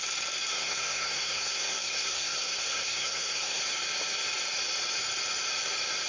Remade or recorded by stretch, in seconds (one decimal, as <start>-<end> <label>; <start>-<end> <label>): 0.0-0.5 recorded; 0.5-3.6 remade; 3.6-6.1 recorded